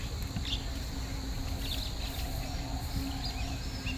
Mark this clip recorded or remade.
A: recorded